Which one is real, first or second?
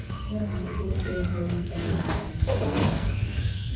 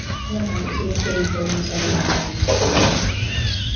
second